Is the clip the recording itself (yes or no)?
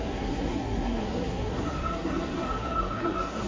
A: no